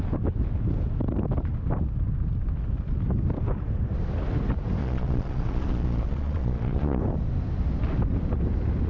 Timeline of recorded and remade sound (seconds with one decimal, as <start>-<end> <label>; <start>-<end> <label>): 0.0-4.8 recorded; 4.8-7.0 remade; 7.0-8.9 recorded